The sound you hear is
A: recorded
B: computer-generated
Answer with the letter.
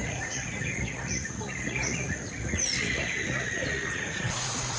B